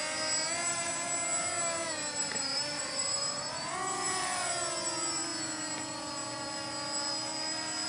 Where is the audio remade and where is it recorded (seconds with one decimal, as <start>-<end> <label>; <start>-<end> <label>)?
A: 0.0-2.2 recorded; 2.2-4.5 remade; 4.5-7.9 recorded